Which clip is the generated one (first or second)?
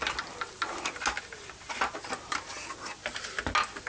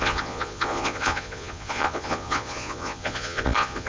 second